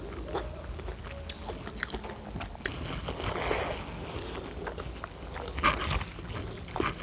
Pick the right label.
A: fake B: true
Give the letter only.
B